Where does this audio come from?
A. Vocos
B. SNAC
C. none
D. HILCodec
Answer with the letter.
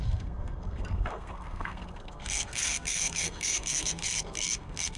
B